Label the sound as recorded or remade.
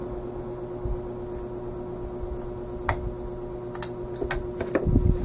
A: recorded